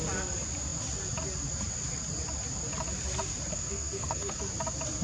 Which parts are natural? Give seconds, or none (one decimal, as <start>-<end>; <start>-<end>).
0.0-3.5; 4.4-5.0